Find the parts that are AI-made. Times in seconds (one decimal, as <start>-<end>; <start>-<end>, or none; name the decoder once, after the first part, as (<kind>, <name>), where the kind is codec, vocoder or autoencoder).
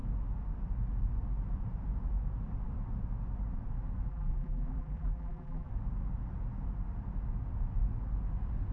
4.1-5.7 (vocoder, BigVGAN v2)